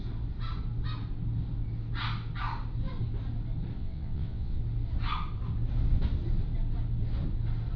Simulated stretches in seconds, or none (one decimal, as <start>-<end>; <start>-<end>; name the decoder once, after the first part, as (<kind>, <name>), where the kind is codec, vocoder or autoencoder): 3.8-4.6 (vocoder, WaveNeXt)